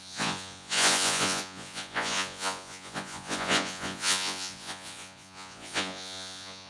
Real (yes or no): no